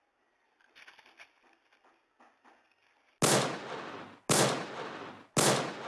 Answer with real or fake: real